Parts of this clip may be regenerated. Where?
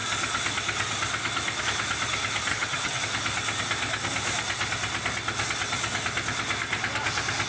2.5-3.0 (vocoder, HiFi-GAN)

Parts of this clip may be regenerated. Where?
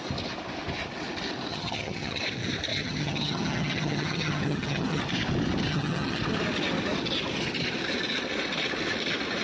1.5-2.2 (vocoder, HiFi-GAN); 2.7-5.0; 5.7-6.2